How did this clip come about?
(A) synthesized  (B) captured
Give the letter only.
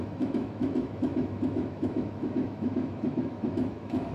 A